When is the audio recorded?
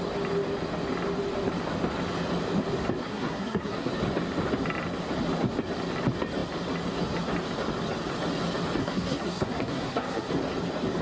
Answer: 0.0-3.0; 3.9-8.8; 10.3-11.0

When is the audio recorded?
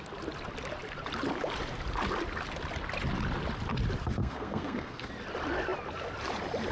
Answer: 0.0-4.2; 5.1-6.7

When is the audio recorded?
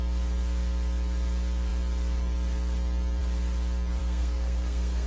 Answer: 0.0-4.0